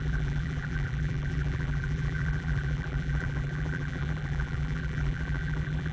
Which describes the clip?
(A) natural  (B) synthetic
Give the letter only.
B